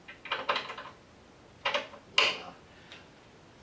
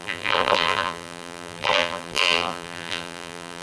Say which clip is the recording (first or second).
first